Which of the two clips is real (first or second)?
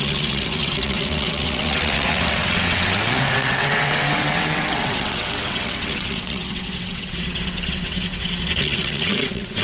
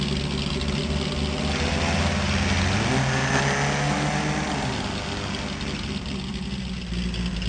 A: second